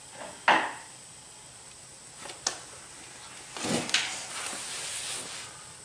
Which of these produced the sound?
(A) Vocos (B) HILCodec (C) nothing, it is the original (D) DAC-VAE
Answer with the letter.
C